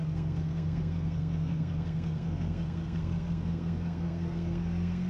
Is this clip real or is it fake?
fake